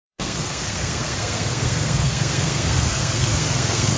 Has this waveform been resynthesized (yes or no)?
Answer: yes